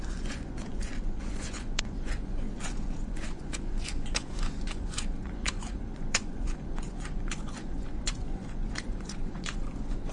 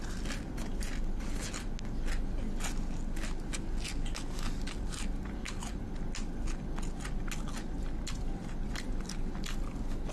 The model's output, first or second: first